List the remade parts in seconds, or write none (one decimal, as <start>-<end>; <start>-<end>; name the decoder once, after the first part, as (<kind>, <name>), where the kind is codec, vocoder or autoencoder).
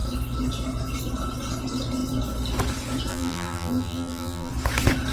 3.1-4.5 (vocoder, BigVGAN v2)